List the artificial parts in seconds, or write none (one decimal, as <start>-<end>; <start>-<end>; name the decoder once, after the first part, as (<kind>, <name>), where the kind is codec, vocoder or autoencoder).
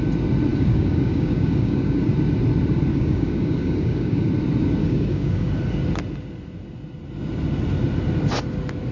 0.5-2.1 (codec, DAC); 2.9-4.3; 4.8-5.5